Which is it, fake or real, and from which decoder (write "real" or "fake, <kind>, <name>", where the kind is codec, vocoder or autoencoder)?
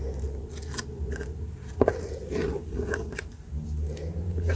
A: real